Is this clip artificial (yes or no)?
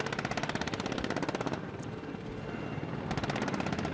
no